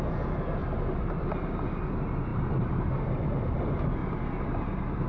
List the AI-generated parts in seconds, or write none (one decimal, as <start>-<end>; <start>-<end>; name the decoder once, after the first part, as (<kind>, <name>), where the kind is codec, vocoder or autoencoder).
0.6-1.2 (vocoder, BigVGAN v2); 2.3-3.2; 4.0-5.1